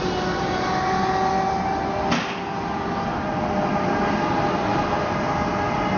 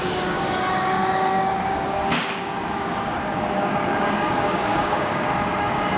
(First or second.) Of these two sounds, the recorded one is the first